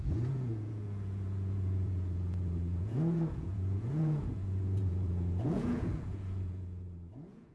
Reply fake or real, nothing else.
fake